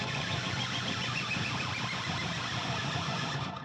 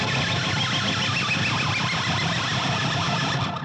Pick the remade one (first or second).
first